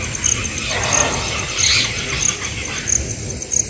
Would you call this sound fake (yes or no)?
no